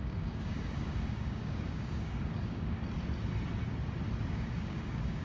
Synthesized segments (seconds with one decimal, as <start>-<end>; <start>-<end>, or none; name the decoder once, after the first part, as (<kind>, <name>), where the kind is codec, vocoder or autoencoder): 0.0-2.8 (codec, DAC); 4.3-5.2